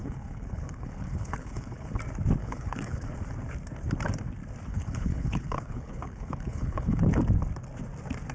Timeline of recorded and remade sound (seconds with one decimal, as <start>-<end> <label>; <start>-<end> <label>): 0.0-2.0 remade; 2.0-2.4 recorded; 2.4-3.1 remade; 3.1-4.7 recorded; 4.7-7.2 remade; 7.2-8.3 recorded